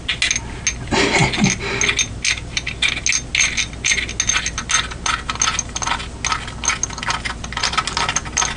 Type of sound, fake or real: real